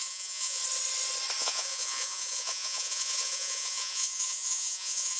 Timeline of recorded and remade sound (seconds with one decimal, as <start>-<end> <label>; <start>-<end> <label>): 0.0-0.6 remade; 0.6-1.4 recorded; 1.4-5.2 remade